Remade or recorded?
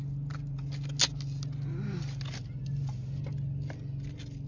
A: recorded